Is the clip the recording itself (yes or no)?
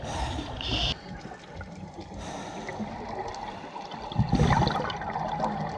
yes